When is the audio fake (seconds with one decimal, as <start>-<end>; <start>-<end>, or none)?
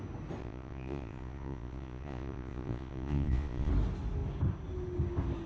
0.4-3.7